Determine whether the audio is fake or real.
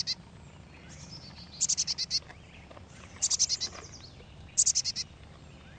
real